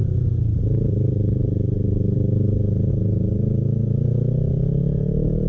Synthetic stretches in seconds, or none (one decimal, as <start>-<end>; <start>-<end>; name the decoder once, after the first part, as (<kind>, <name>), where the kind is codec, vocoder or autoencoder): none